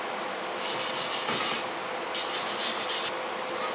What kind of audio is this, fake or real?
real